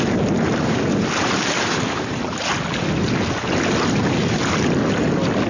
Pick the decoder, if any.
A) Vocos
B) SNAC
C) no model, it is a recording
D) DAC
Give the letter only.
C